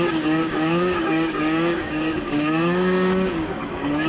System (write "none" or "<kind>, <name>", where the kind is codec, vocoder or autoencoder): codec, DAC